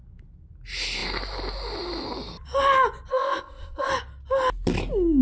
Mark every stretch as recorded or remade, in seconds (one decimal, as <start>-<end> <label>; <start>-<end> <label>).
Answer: 0.0-3.1 recorded; 3.1-3.9 remade; 3.9-5.2 recorded